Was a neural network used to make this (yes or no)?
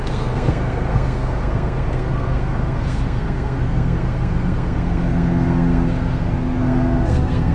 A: yes